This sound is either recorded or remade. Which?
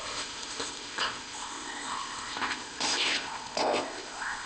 remade